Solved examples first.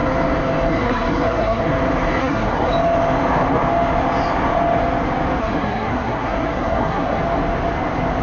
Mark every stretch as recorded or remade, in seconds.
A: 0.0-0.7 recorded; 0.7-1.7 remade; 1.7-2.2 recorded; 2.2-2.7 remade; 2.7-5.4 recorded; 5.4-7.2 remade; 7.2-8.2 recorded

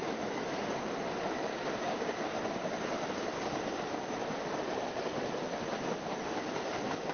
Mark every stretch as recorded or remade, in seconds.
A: 0.0-1.5 recorded; 1.5-2.2 remade; 2.2-7.1 recorded

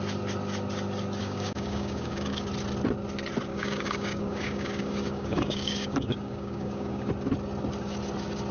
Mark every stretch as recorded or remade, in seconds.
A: 0.0-1.2 recorded; 1.2-2.5 remade; 2.5-3.5 recorded; 3.5-7.1 remade; 7.1-8.5 recorded

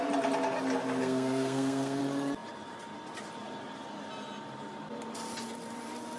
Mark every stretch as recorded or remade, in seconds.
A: 0.0-1.0 recorded; 1.0-2.0 remade; 2.0-6.2 recorded

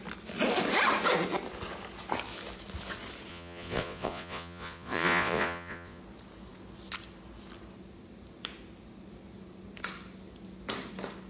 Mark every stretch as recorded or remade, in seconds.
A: 0.0-3.3 recorded; 3.3-6.0 remade; 6.0-11.3 recorded

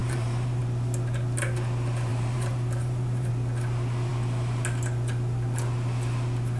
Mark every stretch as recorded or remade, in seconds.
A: 0.0-0.6 remade; 0.6-2.1 recorded; 2.1-3.3 remade; 3.3-6.6 recorded